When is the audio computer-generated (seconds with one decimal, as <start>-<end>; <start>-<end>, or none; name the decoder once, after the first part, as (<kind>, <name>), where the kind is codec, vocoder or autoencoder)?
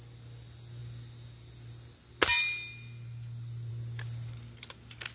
none